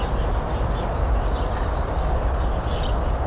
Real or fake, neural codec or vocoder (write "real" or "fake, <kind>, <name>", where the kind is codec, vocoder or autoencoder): real